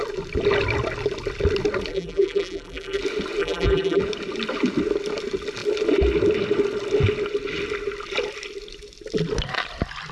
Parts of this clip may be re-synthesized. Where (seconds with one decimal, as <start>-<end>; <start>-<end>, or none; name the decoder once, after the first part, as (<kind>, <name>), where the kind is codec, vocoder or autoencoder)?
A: 1.9-3.0 (vocoder, BigVGAN v2); 3.4-4.0